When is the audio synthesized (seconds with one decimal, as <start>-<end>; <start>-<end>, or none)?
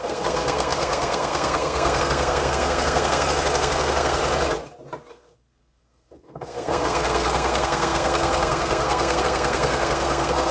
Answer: 0.0-4.2; 5.1-10.5